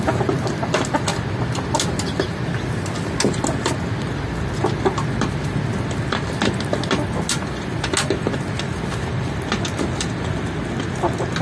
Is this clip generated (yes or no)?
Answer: no